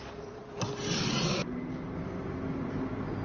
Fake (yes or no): no